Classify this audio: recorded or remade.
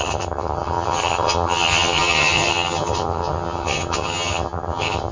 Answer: remade